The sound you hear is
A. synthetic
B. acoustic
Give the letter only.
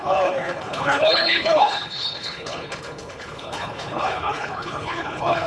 A